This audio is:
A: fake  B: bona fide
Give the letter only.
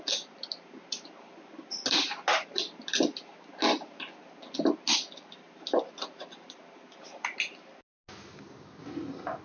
B